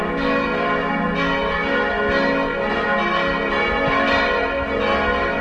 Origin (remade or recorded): recorded